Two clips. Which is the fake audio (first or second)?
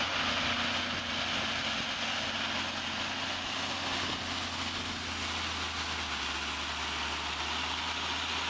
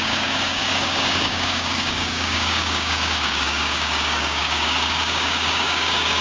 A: second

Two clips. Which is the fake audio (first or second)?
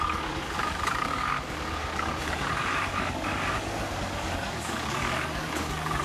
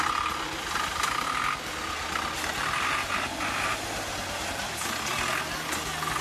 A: first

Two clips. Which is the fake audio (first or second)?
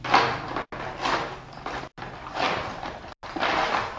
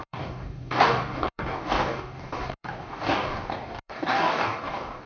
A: second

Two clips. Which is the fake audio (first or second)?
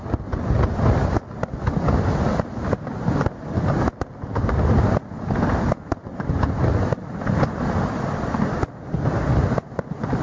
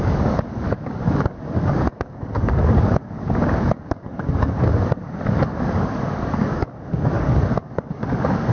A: second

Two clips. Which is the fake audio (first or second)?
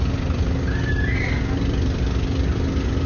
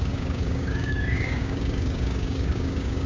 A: second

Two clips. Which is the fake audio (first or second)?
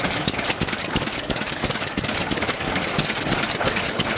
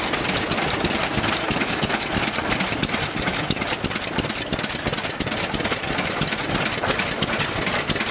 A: first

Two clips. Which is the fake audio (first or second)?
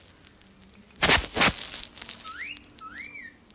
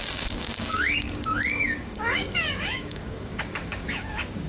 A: second